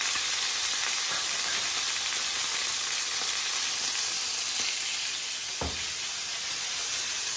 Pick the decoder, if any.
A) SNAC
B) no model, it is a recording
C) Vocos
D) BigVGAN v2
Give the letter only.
B